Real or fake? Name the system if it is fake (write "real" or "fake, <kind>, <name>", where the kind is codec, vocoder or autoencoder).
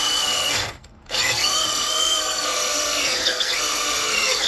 fake, codec, SNAC